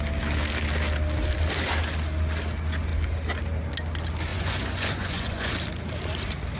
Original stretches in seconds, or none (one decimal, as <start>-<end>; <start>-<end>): 0.0-4.3; 5.5-6.6